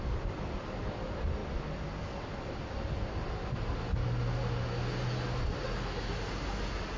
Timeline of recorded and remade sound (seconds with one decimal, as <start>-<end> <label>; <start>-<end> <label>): 0.0-7.0 recorded